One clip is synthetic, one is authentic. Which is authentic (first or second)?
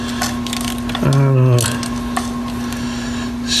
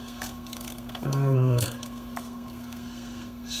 first